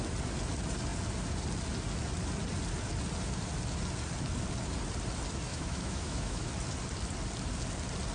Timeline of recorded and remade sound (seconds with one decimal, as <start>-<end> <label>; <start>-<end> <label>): 0.0-5.5 recorded; 5.5-6.5 remade; 6.5-8.1 recorded